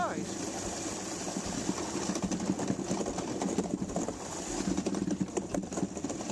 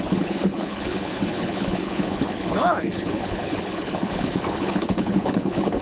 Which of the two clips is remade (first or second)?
second